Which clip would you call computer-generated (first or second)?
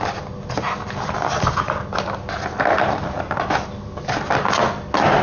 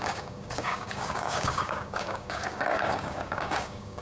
second